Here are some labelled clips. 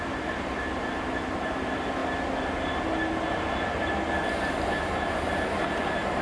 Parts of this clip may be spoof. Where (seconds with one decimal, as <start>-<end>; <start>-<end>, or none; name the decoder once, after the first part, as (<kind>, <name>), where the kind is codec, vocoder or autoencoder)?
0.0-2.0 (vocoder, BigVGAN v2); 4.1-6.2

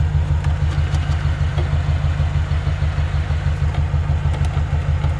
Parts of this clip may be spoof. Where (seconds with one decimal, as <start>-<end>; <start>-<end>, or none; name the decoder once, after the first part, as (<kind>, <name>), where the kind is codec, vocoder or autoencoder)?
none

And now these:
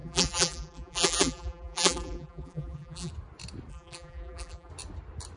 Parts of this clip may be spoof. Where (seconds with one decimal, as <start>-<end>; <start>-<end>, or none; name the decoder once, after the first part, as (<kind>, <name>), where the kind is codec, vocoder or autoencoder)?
0.0-3.1 (vocoder, BigVGAN v2); 3.7-4.7

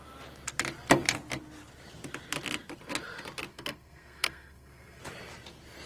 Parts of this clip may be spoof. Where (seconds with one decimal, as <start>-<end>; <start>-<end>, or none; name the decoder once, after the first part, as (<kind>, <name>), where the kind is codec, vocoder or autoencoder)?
3.5-5.0 (codec, SNAC)